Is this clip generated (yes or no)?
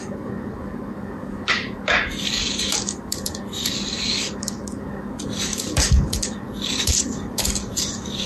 yes